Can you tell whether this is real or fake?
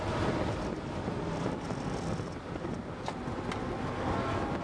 real